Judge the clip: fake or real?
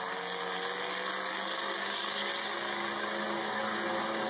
real